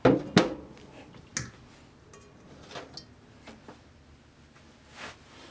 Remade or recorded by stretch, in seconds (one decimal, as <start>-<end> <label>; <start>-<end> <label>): 0.0-5.5 recorded